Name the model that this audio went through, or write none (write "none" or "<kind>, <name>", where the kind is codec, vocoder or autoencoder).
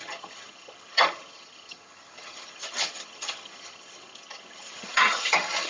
vocoder, HiFi-GAN